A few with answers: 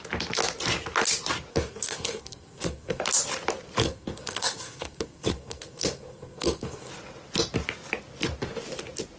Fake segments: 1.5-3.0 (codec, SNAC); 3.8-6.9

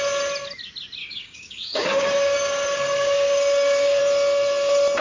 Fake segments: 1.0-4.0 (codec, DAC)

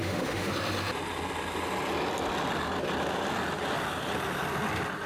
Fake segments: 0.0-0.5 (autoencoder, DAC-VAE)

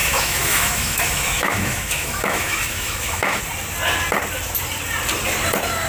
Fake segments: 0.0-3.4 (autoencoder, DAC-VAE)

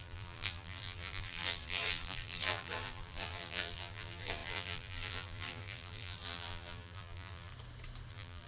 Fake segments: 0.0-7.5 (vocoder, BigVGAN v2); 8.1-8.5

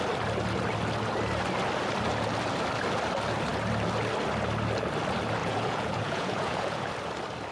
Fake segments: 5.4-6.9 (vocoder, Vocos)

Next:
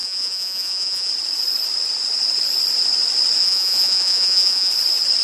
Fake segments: 0.0-1.1 (vocoder, Vocos); 3.4-4.7